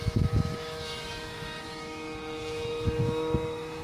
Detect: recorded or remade remade